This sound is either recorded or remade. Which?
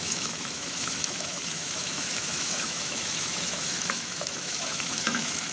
remade